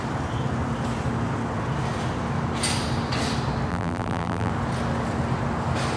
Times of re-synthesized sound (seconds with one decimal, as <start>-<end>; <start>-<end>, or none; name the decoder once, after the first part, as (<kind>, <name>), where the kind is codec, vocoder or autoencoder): 3.7-4.5 (vocoder, BigVGAN v2)